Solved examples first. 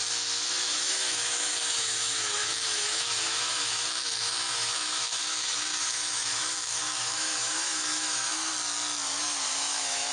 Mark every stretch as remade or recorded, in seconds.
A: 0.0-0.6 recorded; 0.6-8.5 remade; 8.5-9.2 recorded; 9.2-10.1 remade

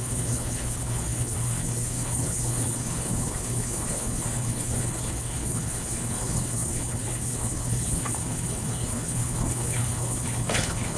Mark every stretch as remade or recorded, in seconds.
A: 0.0-11.0 remade

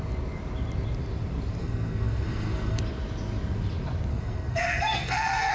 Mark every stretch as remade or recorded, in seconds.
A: 0.0-1.6 recorded; 1.6-2.8 remade; 2.8-4.1 recorded; 4.1-5.5 remade

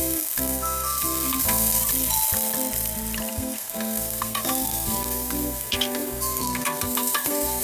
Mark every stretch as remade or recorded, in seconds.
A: 0.0-1.8 remade; 1.8-3.3 recorded; 3.3-7.6 remade

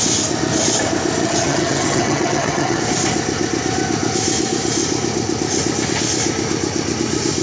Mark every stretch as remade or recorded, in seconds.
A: 0.0-1.2 recorded; 1.2-2.8 remade; 2.8-7.4 recorded